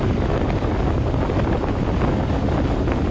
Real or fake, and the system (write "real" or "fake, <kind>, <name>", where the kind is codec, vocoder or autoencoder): real